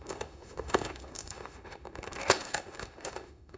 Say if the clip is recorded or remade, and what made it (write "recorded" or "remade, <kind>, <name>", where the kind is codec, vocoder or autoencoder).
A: remade, autoencoder, DAC-VAE